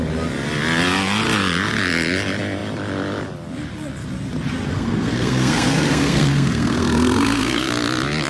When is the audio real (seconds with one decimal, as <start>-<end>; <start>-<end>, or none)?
0.0-4.7; 7.7-8.3

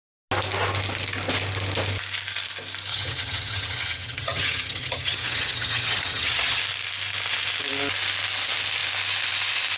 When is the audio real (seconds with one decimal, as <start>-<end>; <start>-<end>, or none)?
0.0-2.9; 6.6-9.8

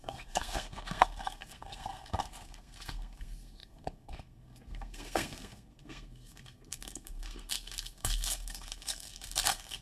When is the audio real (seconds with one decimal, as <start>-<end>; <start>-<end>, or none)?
none

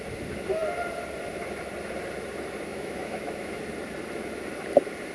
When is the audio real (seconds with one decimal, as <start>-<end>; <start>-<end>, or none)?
0.0-2.7; 3.6-5.1

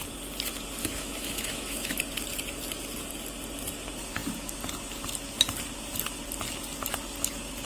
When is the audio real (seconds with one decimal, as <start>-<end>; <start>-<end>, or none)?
0.0-0.8; 2.0-7.7

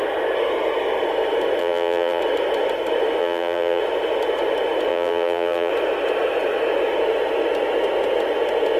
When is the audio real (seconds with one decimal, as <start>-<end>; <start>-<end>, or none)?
0.0-1.6; 2.2-3.2; 3.8-4.9; 5.7-8.8

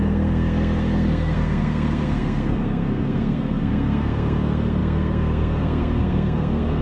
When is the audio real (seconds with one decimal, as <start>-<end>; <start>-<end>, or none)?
none